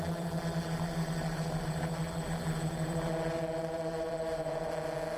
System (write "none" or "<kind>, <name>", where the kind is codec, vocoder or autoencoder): vocoder, BigVGAN v2